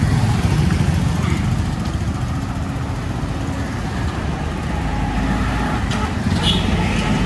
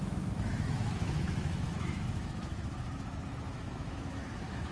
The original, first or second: first